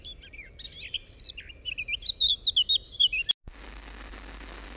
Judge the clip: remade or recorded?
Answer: recorded